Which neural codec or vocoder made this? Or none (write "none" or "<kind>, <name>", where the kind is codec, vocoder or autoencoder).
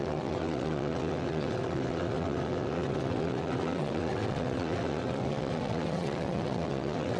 vocoder, WaveNeXt